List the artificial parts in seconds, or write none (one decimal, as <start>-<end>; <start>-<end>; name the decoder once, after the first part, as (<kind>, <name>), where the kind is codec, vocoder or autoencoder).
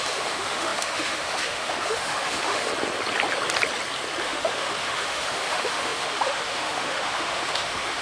0.0-2.7 (autoencoder, DAC-VAE); 4.2-8.0